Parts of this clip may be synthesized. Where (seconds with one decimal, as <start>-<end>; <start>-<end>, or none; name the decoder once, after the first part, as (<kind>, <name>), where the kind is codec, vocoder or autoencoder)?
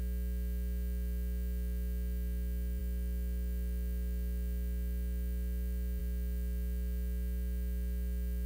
none